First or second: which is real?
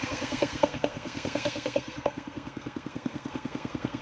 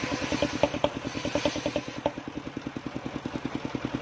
second